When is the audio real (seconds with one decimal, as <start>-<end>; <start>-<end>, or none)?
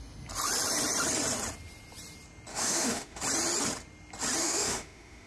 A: 0.0-2.5; 3.2-4.4